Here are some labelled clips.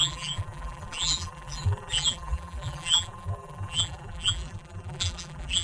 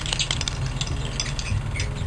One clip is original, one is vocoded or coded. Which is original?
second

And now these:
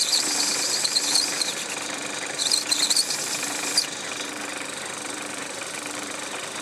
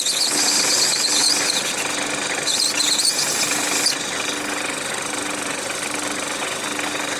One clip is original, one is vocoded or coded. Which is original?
second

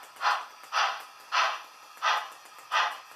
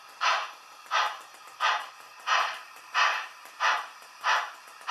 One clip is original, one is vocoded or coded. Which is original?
first